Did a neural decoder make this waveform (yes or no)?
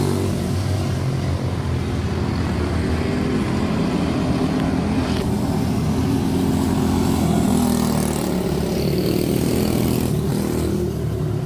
no